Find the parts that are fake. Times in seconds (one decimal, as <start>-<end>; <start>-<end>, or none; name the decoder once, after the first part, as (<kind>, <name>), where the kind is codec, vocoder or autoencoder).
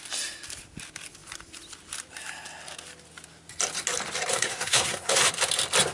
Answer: 4.3-5.2 (codec, SNAC)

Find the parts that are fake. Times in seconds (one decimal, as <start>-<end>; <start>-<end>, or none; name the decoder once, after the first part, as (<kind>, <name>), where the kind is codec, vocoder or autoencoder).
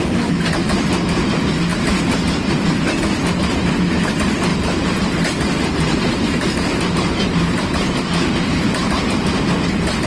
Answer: 1.7-3.0 (vocoder, BigVGAN v2); 4.5-9.0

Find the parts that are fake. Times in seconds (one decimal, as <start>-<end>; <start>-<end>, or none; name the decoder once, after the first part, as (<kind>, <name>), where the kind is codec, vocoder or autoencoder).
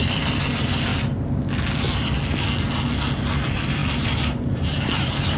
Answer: 0.0-0.9 (vocoder, BigVGAN v2); 3.2-5.4